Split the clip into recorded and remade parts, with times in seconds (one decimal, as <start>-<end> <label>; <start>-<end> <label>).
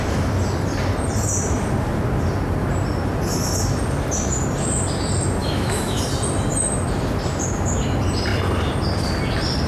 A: 0.0-5.4 recorded; 5.4-6.0 remade; 6.0-9.7 recorded